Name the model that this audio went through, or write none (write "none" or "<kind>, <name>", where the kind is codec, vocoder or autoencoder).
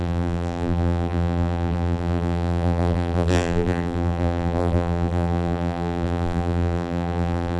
vocoder, BigVGAN v2